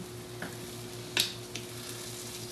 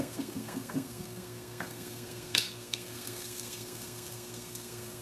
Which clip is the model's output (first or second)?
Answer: second